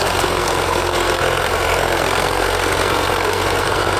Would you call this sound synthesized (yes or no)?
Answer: yes